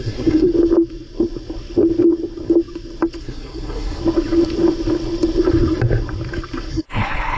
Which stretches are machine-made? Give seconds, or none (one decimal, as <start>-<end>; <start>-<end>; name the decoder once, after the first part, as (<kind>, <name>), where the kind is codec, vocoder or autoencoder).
0.0-0.5 (codec, SNAC); 3.2-4.0; 6.7-7.4